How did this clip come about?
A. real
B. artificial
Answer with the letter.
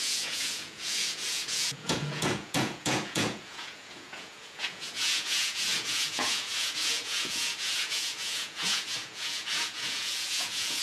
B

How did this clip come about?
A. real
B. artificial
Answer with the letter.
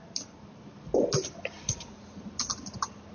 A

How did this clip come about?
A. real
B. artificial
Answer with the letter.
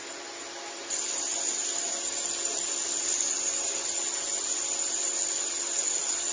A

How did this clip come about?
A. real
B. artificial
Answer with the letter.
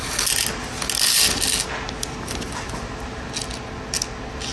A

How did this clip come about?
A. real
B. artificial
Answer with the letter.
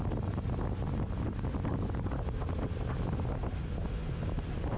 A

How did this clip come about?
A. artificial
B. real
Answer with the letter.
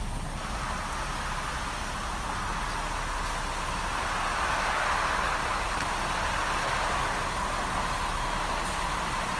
B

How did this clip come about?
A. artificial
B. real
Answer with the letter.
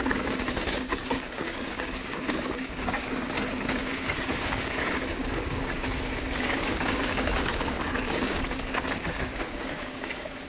A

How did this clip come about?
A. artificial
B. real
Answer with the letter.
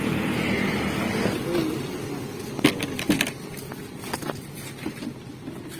B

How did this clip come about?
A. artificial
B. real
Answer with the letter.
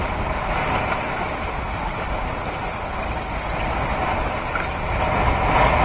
B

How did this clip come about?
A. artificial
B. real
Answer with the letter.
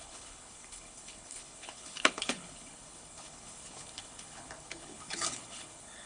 A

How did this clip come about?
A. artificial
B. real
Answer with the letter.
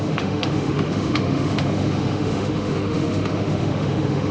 A